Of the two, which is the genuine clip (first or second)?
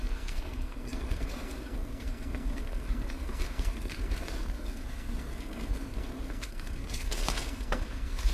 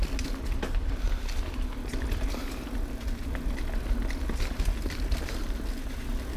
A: second